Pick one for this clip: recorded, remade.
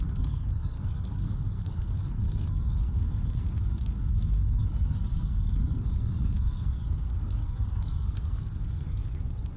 remade